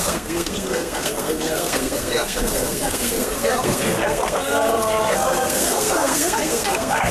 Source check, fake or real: fake